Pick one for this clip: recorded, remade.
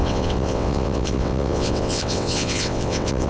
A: remade